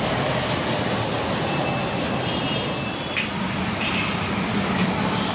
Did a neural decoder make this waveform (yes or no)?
no